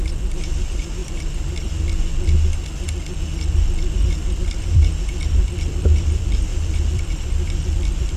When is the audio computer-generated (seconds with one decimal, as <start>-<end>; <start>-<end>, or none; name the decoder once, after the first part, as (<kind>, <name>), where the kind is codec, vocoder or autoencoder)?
0.0-2.1 (vocoder, BigVGAN v2); 3.9-8.2